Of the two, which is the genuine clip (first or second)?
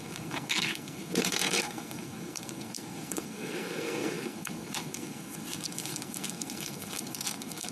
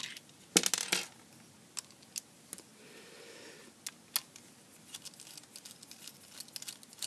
second